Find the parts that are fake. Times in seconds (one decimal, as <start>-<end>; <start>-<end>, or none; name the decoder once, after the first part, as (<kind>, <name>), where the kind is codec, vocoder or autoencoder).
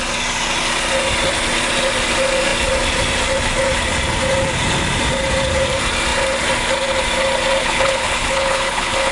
7.6-9.1 (codec, HILCodec)